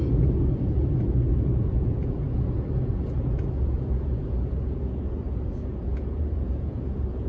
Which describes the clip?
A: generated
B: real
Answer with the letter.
A